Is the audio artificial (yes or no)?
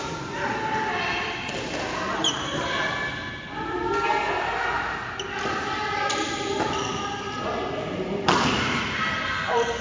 no